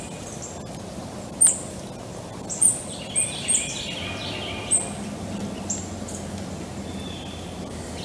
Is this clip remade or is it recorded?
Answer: recorded